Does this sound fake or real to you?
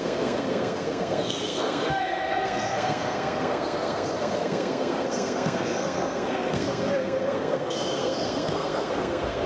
fake